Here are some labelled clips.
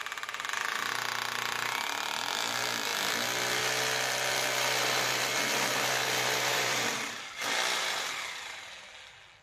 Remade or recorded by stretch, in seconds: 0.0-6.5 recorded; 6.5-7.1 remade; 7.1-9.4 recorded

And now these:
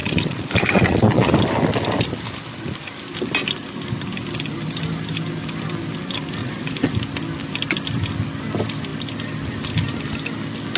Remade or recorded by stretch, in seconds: 0.0-1.3 remade; 1.3-6.4 recorded; 6.4-6.9 remade; 6.9-10.8 recorded

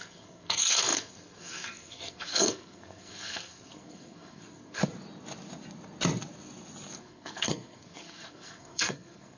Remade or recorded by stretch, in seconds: 0.0-4.8 remade; 4.8-7.0 recorded; 7.0-9.4 remade